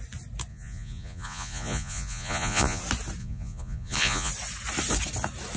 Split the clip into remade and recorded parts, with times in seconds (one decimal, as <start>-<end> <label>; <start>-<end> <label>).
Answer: 0.0-0.5 recorded; 0.5-2.8 remade; 2.8-3.2 recorded; 3.2-4.3 remade; 4.3-5.6 recorded